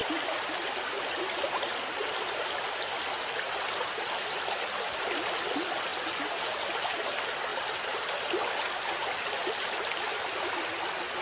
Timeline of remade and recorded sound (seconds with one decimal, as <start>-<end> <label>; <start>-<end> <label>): 0.0-2.0 recorded; 2.0-2.7 remade; 2.7-5.9 recorded; 5.9-6.5 remade; 6.5-7.5 recorded; 7.5-9.7 remade; 9.7-11.2 recorded